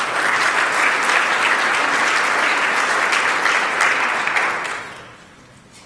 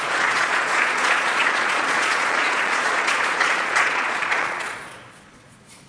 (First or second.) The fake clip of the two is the second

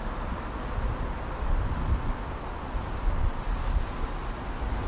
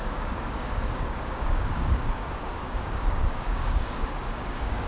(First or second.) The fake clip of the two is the second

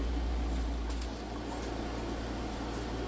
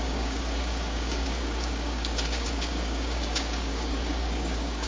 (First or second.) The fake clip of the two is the second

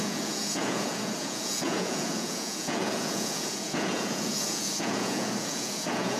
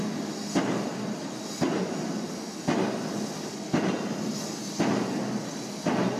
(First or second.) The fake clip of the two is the first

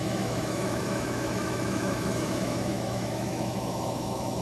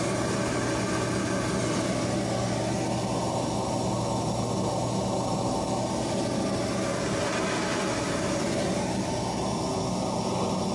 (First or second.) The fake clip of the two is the first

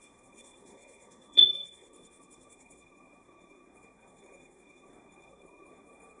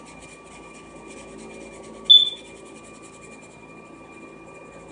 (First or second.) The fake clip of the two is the first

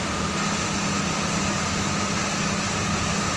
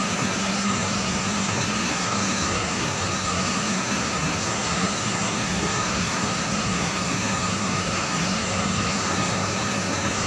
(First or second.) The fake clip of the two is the second